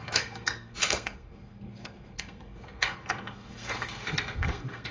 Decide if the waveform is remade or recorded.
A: remade